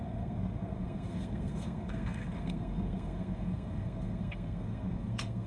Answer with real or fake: fake